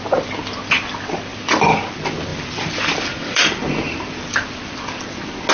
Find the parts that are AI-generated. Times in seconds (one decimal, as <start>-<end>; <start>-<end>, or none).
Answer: 1.3-1.9; 2.3-5.0